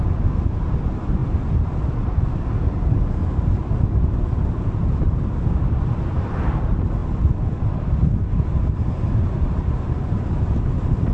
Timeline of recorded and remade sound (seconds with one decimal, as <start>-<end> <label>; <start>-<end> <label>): 0.0-11.1 recorded